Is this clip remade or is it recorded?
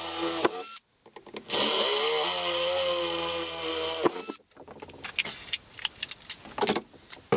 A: recorded